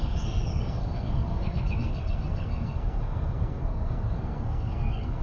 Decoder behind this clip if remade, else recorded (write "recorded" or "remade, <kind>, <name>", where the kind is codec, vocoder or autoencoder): remade, codec, SNAC